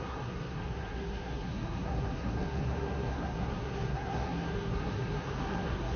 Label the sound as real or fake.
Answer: fake